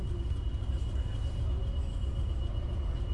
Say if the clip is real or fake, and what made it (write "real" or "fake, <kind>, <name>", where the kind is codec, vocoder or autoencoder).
real